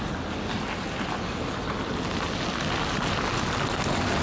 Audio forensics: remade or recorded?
recorded